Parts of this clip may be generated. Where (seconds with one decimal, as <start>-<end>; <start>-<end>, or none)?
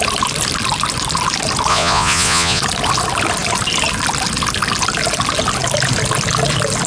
1.7-2.6